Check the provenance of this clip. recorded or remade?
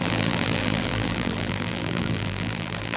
remade